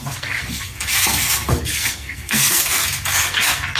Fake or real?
fake